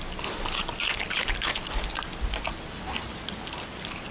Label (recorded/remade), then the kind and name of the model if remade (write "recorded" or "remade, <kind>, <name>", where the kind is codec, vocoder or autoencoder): recorded